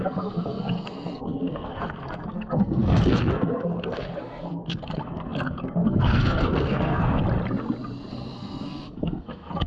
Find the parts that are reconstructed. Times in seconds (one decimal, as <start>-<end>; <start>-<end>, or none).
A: 0.0-7.2; 8.1-9.7